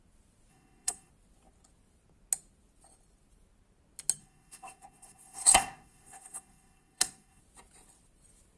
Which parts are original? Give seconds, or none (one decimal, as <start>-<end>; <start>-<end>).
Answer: 0.0-0.5; 1.1-4.2; 7.4-8.6

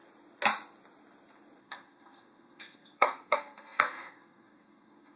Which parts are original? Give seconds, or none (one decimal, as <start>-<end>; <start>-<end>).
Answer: 0.0-1.6

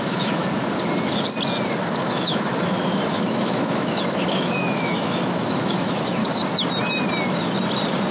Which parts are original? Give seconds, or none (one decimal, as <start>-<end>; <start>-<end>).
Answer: 0.4-2.0; 2.5-3.1; 6.2-8.1

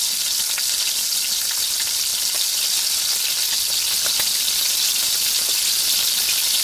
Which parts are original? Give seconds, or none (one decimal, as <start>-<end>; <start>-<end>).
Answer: 0.0-6.6

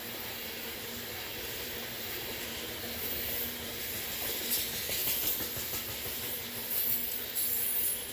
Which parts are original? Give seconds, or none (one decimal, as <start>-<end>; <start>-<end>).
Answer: 0.0-8.1

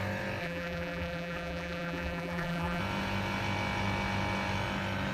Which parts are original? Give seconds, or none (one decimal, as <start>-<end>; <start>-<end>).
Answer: 0.0-0.4; 2.8-5.1

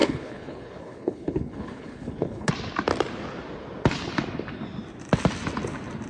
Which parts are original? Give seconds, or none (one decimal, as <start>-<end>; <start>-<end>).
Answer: 2.5-6.1

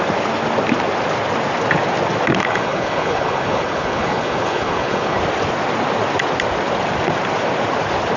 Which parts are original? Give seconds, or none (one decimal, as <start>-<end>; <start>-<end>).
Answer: 0.0-2.4; 5.2-8.2